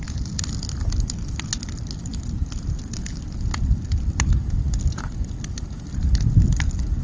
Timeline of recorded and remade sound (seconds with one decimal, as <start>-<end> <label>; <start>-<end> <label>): 0.0-7.0 recorded